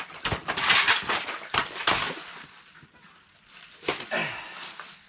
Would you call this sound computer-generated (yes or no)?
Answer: no